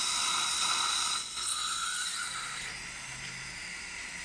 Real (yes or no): yes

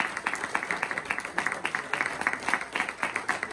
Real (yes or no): yes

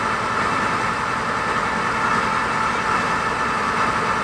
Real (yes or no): yes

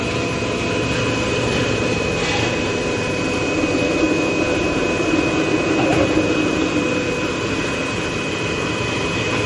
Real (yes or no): no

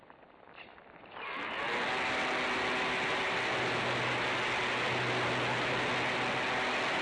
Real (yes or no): yes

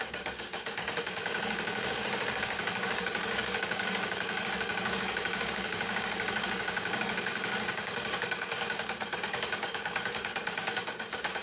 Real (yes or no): no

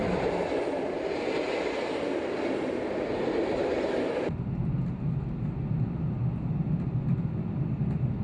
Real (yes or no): yes